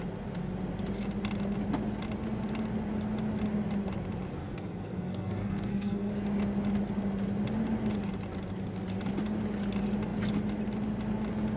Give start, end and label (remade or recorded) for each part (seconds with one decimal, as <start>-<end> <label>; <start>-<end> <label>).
0.0-4.4 recorded; 4.4-6.1 remade; 6.1-11.6 recorded